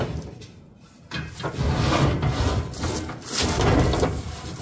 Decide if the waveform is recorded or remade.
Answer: recorded